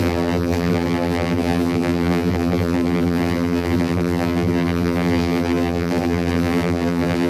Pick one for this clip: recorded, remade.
remade